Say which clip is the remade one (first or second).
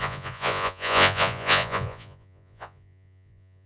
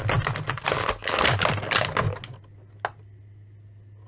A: first